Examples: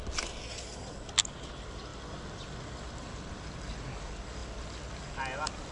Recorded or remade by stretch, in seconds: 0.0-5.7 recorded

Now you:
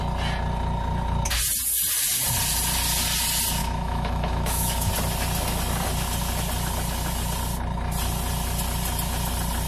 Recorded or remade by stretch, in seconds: 0.0-3.6 recorded; 3.6-4.9 remade; 4.9-9.7 recorded

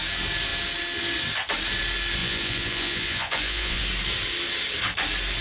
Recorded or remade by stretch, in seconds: 0.0-2.2 recorded; 2.2-3.8 remade; 3.8-5.4 recorded